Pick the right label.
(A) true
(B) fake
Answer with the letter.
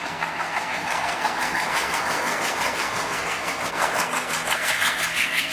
B